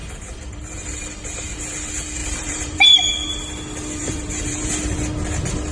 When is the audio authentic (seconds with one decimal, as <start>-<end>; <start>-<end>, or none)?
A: 0.8-2.2; 3.0-4.0; 4.7-5.7